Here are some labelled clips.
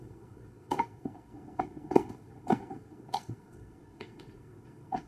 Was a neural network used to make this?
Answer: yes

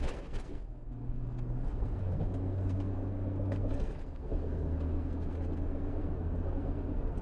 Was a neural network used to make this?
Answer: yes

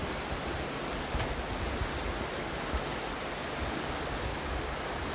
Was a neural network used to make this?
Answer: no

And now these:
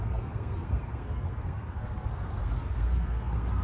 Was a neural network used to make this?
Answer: yes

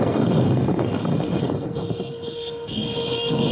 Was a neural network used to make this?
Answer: yes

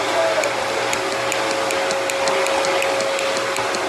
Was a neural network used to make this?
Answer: no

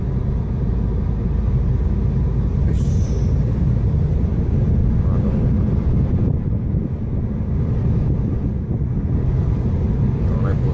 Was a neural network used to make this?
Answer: no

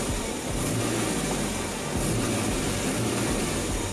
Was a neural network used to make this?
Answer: no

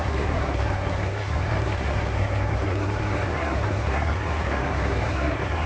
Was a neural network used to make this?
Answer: yes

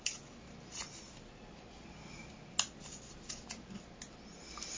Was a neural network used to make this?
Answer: no